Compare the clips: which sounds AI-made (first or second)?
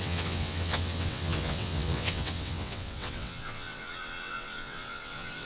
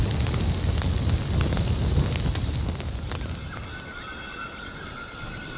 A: first